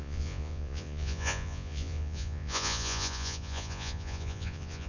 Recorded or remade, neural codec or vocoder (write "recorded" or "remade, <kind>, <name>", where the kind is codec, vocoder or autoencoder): remade, vocoder, Vocos